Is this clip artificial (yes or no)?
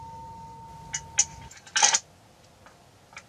no